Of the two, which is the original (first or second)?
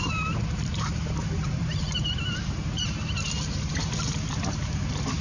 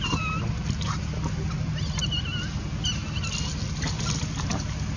second